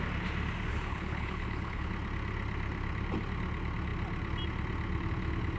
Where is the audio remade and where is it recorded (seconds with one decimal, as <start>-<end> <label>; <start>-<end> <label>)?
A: 0.0-0.7 recorded; 0.7-1.9 remade; 1.9-5.6 recorded